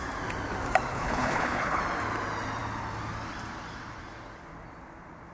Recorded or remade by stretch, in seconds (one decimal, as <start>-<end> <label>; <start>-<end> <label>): 0.0-0.9 recorded; 0.9-1.8 remade; 1.8-5.3 recorded